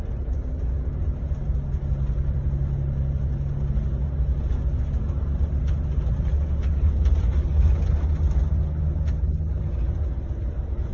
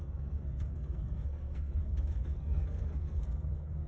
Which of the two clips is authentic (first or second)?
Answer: first